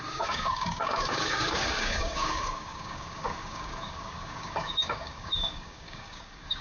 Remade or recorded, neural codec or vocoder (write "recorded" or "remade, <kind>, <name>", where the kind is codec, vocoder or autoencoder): remade, codec, DAC